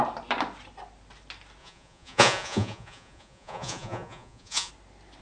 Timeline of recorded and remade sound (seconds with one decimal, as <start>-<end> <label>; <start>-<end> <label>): 0.0-1.6 recorded; 1.6-4.7 remade; 4.7-5.2 recorded